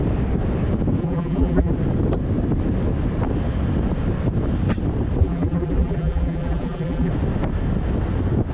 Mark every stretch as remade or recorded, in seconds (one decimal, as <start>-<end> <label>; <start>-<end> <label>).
0.0-1.0 recorded; 1.0-1.7 remade; 1.7-5.2 recorded; 5.2-7.1 remade; 7.1-8.5 recorded